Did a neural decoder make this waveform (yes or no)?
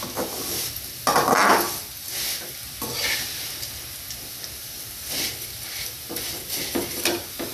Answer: no